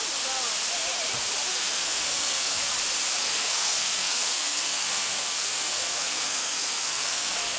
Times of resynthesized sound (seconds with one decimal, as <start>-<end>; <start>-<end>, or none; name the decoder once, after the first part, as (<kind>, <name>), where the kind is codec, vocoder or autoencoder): 1.5-2.7 (codec, SNAC); 3.2-7.6